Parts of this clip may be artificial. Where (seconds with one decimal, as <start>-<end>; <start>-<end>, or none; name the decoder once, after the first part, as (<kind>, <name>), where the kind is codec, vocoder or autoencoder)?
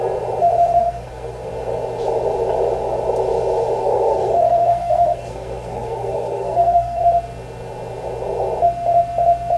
0.8-1.5 (codec, SNAC); 3.8-7.0